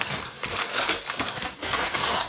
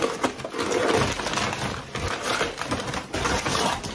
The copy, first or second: first